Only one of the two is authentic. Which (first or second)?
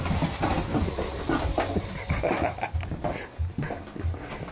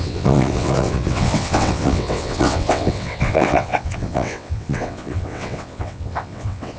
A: first